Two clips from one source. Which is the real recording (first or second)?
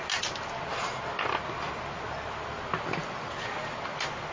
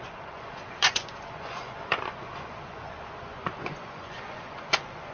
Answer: first